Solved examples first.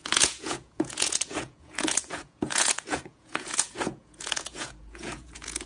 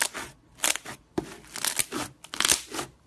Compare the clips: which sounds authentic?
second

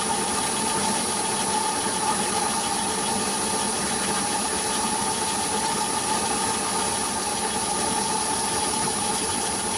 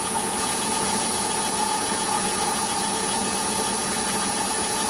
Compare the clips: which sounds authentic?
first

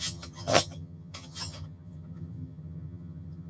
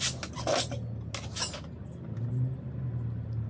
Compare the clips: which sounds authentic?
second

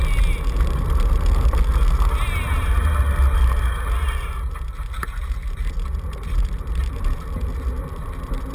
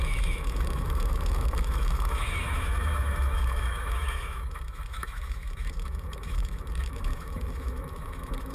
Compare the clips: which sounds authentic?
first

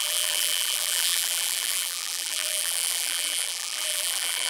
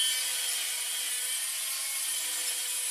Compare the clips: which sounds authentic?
second